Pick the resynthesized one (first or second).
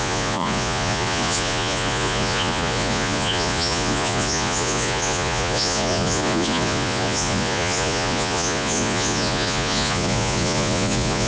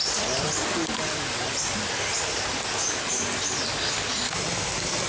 first